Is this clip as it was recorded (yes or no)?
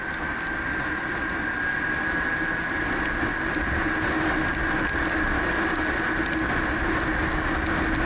yes